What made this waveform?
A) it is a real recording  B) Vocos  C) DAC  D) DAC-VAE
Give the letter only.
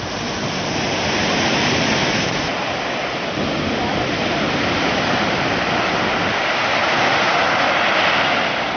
A